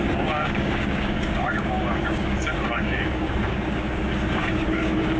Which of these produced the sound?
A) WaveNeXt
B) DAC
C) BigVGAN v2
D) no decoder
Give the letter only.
B